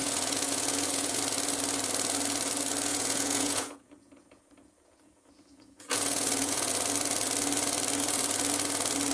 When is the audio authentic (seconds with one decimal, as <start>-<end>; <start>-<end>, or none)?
1.2-2.9; 6.7-9.1